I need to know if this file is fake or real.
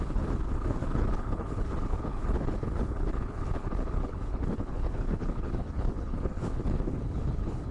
fake